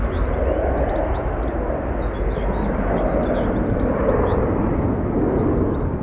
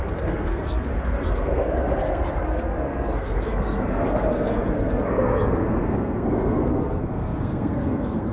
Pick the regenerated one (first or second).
second